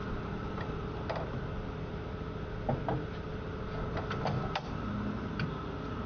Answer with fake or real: real